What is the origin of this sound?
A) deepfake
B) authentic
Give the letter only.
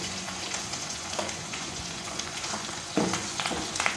A